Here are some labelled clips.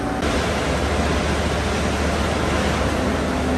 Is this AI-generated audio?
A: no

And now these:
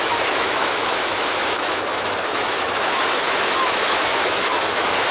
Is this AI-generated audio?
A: yes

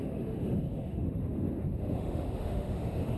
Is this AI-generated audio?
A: yes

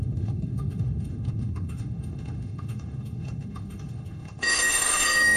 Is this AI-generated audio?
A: yes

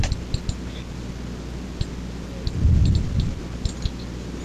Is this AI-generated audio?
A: no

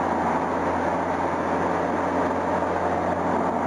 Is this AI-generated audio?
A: no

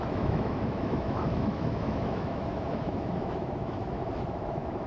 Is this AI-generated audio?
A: yes